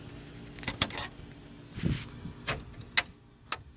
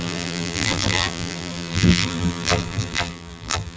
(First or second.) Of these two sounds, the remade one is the second